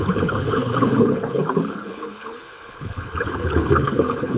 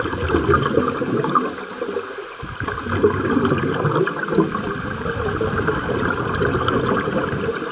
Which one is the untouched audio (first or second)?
second